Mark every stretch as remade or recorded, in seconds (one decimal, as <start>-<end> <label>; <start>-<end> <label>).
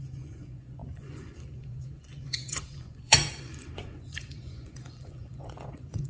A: 0.0-6.1 remade